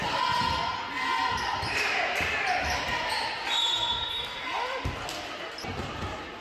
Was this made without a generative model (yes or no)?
yes